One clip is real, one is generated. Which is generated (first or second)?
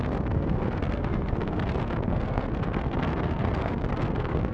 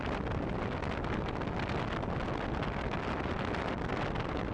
first